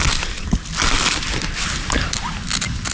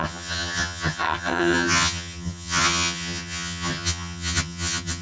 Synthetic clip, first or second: second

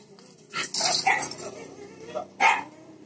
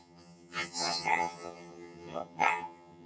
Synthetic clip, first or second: second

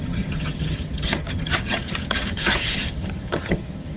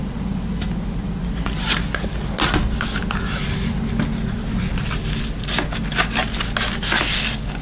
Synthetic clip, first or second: first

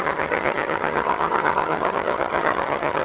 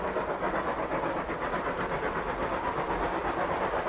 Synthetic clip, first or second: first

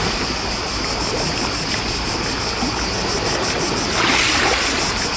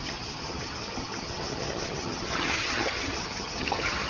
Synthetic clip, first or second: second